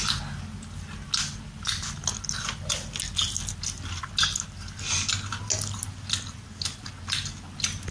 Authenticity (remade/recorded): recorded